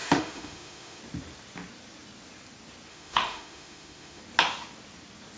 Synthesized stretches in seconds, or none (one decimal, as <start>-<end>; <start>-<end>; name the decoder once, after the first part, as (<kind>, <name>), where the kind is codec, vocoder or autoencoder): 0.0-1.0 (autoencoder, DAC-VAE); 2.9-4.2